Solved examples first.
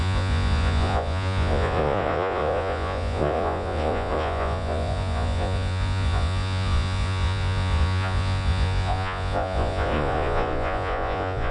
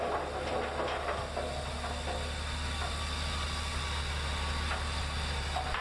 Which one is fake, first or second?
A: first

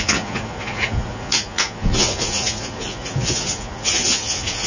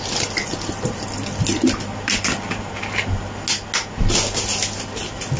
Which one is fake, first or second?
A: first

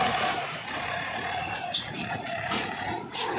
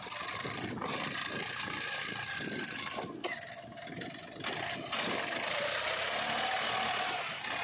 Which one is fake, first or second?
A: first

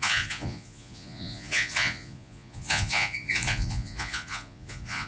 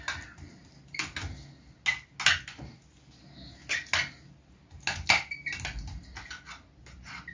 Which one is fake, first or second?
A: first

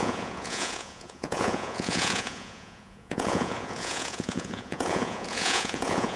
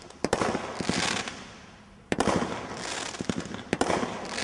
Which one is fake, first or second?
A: first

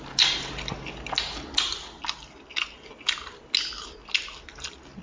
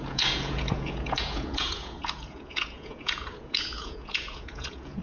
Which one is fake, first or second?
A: second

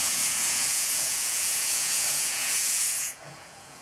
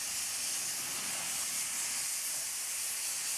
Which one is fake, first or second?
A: first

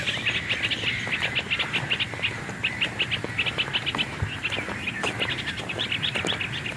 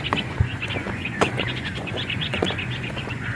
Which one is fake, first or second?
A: second